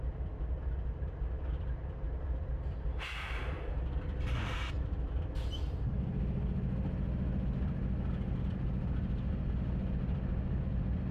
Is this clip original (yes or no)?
yes